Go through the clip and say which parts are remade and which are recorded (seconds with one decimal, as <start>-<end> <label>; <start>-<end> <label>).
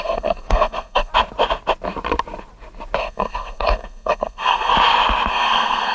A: 0.0-1.1 remade; 1.1-3.0 recorded; 3.0-4.7 remade; 4.7-5.3 recorded; 5.3-5.9 remade